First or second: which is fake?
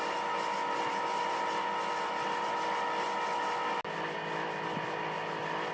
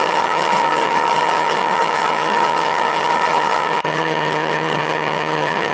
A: second